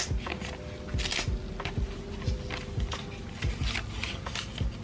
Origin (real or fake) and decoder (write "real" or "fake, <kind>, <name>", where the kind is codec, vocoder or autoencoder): real